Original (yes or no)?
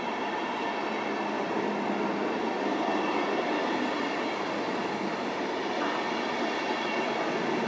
yes